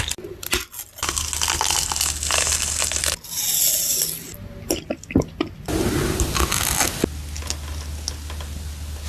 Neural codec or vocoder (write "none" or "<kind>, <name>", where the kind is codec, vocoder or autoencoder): none